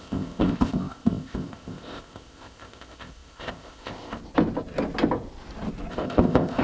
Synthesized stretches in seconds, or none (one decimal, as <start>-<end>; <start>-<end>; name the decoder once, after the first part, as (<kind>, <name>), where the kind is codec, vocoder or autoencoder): 0.0-4.2 (codec, ZipCodec); 5.9-6.6